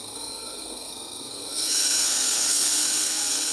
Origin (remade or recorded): remade